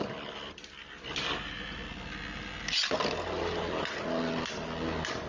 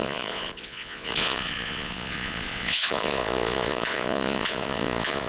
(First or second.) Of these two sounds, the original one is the first